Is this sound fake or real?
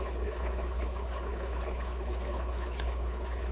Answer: fake